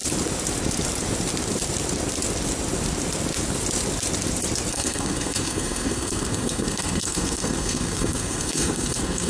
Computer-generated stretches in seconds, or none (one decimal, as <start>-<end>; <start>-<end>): 4.7-9.3